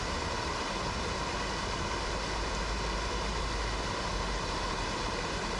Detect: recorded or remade recorded